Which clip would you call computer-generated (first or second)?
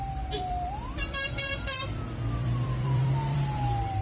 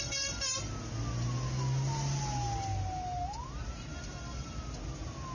first